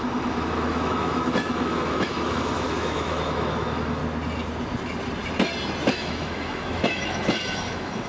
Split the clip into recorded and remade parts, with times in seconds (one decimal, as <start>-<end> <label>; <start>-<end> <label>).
0.0-4.0 remade; 4.0-5.9 recorded; 5.9-8.1 remade